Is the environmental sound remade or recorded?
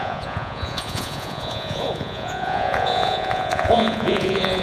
remade